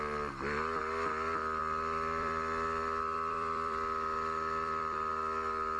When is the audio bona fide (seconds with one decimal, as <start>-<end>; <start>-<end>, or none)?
0.0-1.6; 5.1-5.8